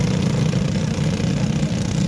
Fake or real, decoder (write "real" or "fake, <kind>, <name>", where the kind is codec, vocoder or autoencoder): real